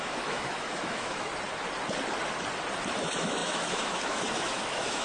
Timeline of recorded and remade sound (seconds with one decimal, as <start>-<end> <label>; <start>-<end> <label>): 0.0-1.3 remade; 1.3-3.0 recorded; 3.0-5.0 remade